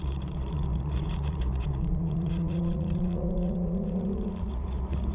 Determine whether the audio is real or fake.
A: fake